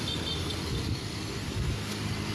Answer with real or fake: real